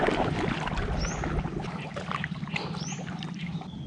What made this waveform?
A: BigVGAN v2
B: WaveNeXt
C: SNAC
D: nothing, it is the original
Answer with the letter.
D